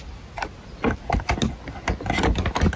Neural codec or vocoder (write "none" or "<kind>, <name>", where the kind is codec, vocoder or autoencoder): none